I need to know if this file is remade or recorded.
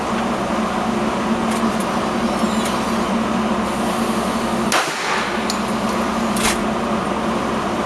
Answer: recorded